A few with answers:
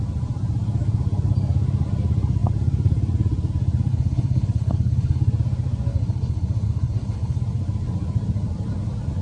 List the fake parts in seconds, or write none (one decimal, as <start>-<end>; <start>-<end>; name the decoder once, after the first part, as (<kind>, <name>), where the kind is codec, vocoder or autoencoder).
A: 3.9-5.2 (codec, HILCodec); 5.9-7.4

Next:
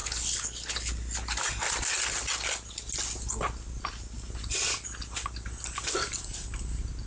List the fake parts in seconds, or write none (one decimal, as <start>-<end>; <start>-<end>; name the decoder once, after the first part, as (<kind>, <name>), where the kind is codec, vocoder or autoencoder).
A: 0.0-0.9 (codec, HILCodec)

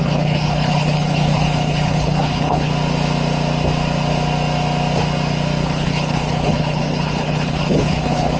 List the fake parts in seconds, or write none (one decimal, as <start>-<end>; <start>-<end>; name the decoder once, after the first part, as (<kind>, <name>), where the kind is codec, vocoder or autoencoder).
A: 0.0-2.7 (codec, HILCodec); 5.6-8.4

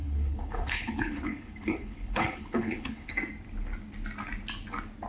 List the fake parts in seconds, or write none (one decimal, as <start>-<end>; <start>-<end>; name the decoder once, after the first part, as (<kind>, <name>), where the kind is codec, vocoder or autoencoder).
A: 0.0-3.1 (codec, HILCodec)